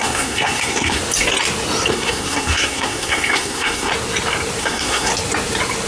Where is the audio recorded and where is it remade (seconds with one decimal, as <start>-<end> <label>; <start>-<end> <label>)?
0.0-1.0 remade; 1.0-1.9 recorded; 1.9-3.9 remade; 3.9-4.6 recorded; 4.6-5.1 remade; 5.1-5.9 recorded